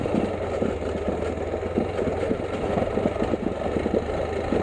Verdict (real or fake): real